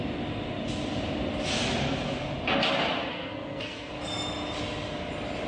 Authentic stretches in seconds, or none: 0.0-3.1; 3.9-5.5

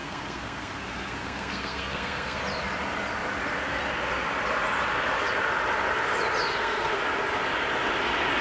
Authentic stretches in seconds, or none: 2.4-6.5; 7.0-8.4

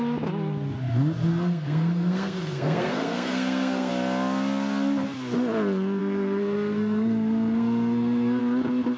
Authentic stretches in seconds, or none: 0.0-1.3; 3.9-6.0; 8.4-9.0

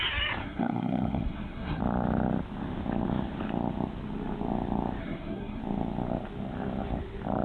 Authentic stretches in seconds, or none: 0.0-0.4; 1.8-5.0; 5.6-7.4

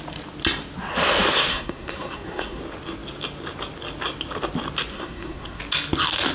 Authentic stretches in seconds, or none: 0.0-1.5; 2.6-4.9; 5.6-6.3

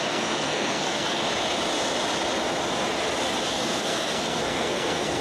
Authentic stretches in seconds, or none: 1.2-3.5